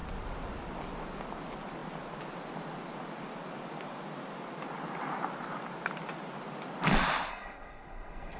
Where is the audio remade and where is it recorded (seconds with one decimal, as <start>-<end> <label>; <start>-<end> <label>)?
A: 0.0-7.3 recorded; 7.3-8.4 remade